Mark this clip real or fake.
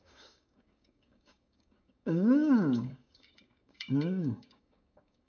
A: fake